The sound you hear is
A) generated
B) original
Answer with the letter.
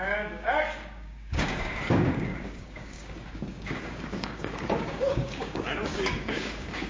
A